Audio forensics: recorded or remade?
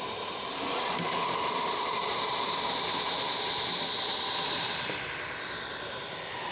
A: recorded